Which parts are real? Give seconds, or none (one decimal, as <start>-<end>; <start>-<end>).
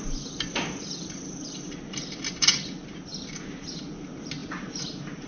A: 0.0-4.4